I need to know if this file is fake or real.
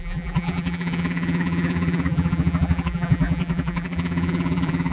fake